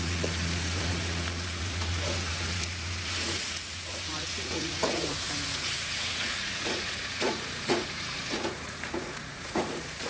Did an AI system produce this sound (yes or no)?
yes